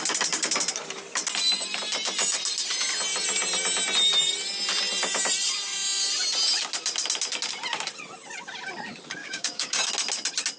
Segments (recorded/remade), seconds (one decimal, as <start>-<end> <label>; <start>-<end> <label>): 0.0-9.2 recorded; 9.2-9.9 remade; 9.9-10.6 recorded